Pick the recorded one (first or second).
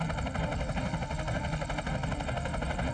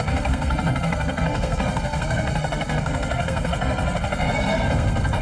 first